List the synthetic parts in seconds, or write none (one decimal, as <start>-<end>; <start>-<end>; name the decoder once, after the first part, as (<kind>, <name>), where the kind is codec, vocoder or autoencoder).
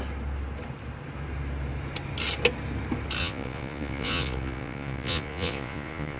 3.2-6.2 (vocoder, Vocos)